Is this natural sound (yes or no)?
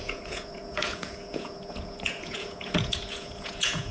no